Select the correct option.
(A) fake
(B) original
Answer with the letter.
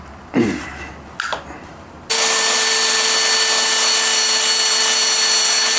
B